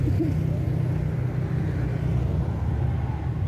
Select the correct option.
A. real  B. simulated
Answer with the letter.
A